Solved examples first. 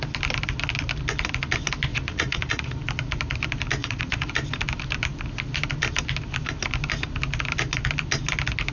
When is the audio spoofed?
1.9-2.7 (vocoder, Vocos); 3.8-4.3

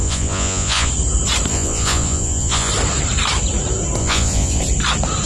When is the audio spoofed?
0.0-0.9 (vocoder, Vocos); 1.5-2.7; 4.0-4.6

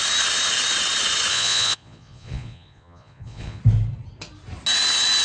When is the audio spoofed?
1.3-3.6 (vocoder, Vocos)

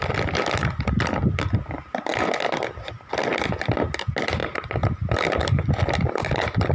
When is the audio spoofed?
none

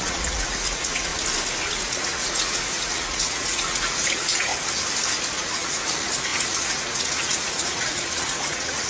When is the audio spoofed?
0.0-1.1 (vocoder, Vocos); 1.7-4.5; 5.3-8.9

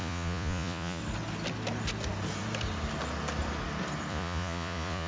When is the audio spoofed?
0.0-1.0 (vocoder, Vocos); 4.1-5.1

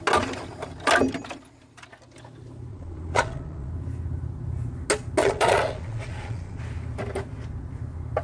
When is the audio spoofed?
2.7-3.7 (vocoder, Vocos); 5.2-6.6

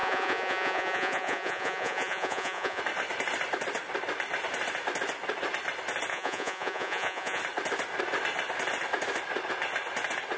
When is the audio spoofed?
0.0-2.8 (vocoder, Vocos); 6.1-7.4